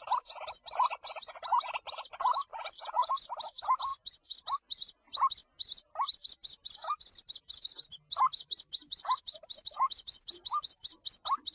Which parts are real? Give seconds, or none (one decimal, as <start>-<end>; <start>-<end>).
0.0-2.5; 3.1-11.5